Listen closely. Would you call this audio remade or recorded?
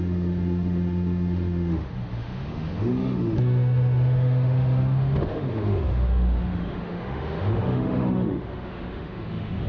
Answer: remade